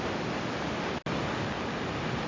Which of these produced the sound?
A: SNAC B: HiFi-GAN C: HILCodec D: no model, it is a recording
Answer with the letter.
D